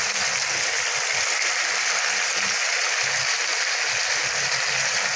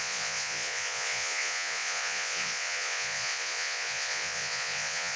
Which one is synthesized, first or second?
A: second